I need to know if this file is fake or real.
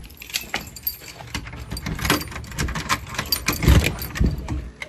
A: real